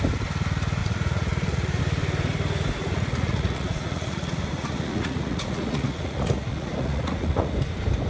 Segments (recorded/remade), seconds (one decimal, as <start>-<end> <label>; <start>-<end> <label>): 0.0-0.8 recorded; 0.8-1.8 remade; 1.8-2.8 recorded; 2.8-7.5 remade; 7.5-8.1 recorded